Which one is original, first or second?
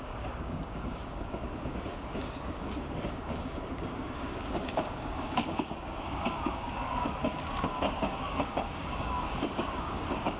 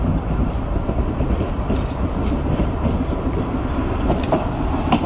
second